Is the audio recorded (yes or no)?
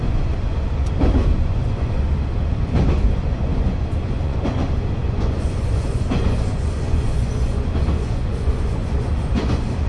no